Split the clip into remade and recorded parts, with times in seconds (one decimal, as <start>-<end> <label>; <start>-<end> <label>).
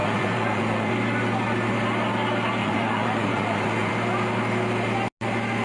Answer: 0.0-0.9 remade; 0.9-2.6 recorded; 2.6-3.9 remade; 3.9-5.6 recorded